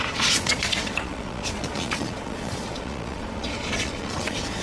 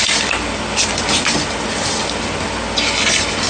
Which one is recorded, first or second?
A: second